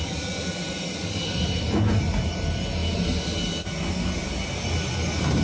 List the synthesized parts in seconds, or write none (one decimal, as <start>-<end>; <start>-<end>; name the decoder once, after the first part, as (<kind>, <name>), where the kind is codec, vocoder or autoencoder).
none